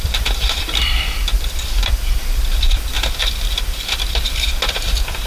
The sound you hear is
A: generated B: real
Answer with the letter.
A